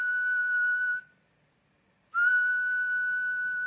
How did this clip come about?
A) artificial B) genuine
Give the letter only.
B